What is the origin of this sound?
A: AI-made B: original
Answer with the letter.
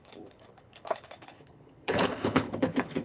A